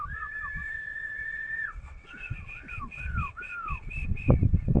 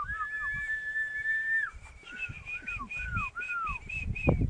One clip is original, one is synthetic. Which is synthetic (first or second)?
first